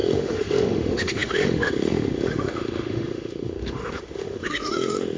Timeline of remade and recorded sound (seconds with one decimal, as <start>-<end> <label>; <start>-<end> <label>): 0.0-5.2 remade